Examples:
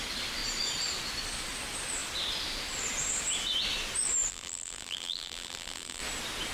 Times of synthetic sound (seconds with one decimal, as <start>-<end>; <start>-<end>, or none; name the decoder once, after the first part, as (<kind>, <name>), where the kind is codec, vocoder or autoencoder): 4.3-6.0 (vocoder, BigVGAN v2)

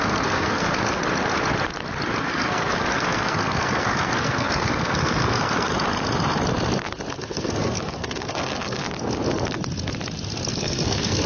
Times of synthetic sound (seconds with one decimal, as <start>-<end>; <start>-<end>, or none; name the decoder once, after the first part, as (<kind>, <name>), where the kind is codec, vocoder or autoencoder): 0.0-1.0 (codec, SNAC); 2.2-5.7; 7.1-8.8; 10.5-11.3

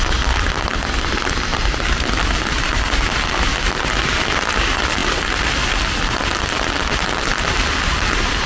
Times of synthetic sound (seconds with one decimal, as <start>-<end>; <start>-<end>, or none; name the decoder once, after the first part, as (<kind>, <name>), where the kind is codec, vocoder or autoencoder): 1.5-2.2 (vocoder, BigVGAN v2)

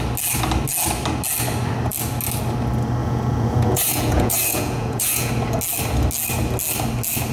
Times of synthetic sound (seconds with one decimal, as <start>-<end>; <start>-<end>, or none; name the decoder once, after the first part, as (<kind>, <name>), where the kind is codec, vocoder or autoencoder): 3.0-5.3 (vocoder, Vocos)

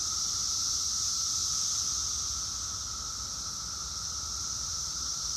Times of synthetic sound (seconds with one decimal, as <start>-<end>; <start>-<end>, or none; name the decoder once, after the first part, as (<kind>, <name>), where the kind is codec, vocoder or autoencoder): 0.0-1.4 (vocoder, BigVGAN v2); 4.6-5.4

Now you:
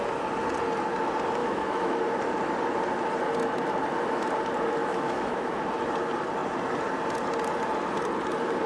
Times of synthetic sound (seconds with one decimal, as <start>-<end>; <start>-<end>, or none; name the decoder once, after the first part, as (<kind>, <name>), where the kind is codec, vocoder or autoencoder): 1.4-1.9 (autoencoder, DAC-VAE); 4.8-5.6

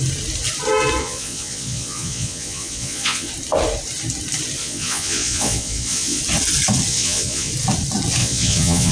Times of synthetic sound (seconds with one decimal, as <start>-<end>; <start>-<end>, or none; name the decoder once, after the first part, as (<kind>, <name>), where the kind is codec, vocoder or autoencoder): 1.0-3.3 (vocoder, Vocos); 4.6-6.2; 6.9-7.5; 8.2-8.9

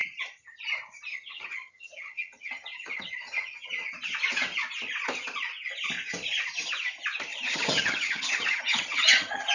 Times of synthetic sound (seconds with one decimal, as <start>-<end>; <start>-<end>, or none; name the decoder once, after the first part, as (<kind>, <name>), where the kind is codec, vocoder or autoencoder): 1.1-3.7 (vocoder, HiFi-GAN); 7.3-9.5